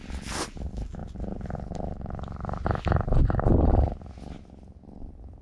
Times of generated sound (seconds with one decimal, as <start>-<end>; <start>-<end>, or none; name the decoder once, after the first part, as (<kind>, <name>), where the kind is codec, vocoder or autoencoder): none